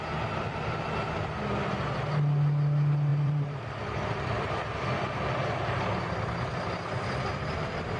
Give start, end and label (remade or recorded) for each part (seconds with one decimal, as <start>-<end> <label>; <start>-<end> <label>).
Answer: 0.0-3.1 recorded; 3.1-4.5 remade; 4.5-8.0 recorded